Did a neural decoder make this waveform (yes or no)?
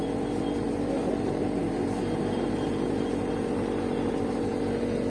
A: yes